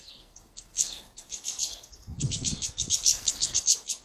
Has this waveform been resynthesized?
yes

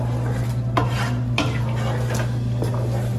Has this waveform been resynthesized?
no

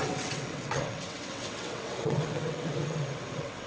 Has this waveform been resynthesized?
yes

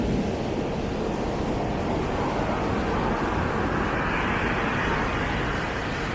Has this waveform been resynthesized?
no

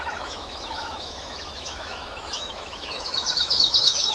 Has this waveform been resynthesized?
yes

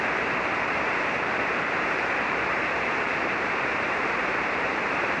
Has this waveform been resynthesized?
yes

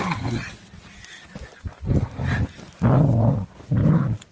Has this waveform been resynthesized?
no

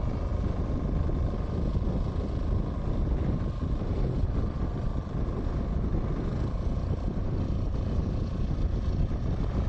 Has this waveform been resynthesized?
no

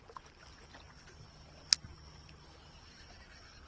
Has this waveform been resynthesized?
no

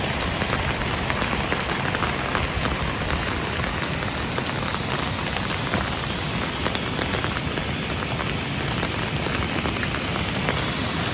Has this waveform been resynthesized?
no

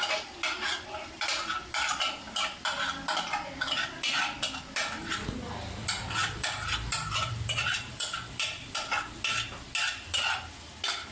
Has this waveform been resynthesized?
no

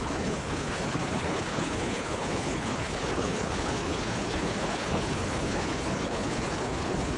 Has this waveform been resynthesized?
yes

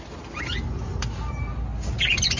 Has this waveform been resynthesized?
no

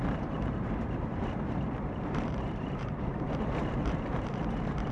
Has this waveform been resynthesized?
yes